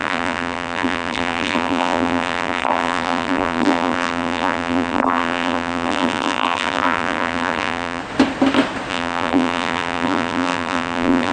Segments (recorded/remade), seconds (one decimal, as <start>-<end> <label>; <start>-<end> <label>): 0.0-8.0 remade; 8.0-8.9 recorded; 8.9-11.3 remade